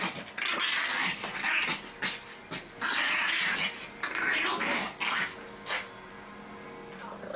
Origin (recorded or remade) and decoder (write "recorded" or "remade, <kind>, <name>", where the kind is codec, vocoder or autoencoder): recorded